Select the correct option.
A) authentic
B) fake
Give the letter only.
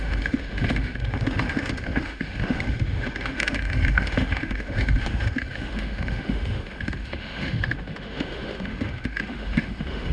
B